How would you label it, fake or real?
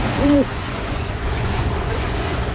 fake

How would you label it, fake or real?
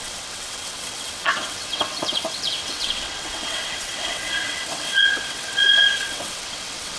fake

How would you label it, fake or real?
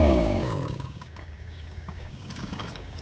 fake